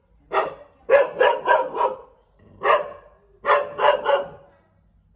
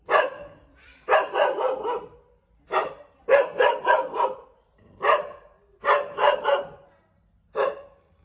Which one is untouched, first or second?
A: first